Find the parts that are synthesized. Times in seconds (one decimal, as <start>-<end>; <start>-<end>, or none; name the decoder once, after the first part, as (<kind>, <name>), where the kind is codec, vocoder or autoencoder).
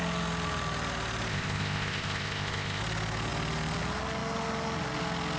1.3-2.8 (codec, ZipCodec)